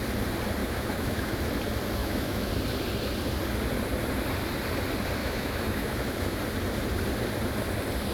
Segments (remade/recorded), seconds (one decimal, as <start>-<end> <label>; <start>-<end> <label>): 0.0-0.6 recorded; 0.6-1.4 remade; 1.4-2.0 recorded; 2.0-2.5 remade; 2.5-5.2 recorded; 5.2-6.4 remade; 6.4-8.1 recorded